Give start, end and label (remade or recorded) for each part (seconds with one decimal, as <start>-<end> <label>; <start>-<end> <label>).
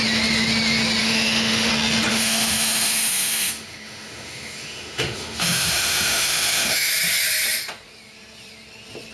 0.0-1.0 recorded; 1.0-1.7 remade; 1.7-2.1 recorded; 2.1-6.9 remade; 6.9-9.1 recorded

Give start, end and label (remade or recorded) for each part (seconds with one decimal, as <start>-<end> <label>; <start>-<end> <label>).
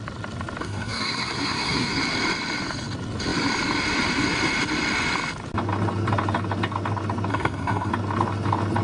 0.0-0.6 recorded; 0.6-1.9 remade; 1.9-7.3 recorded; 7.3-7.9 remade; 7.9-8.8 recorded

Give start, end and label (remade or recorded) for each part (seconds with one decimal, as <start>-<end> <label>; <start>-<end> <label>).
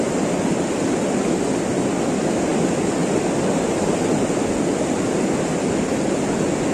0.0-6.7 recorded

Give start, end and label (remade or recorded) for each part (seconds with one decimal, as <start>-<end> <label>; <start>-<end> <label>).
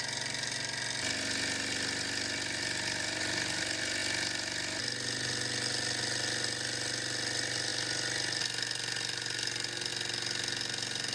0.0-11.1 recorded